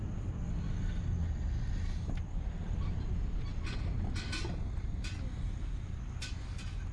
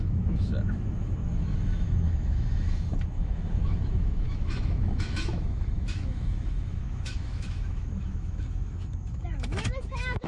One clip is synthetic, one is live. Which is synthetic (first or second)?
second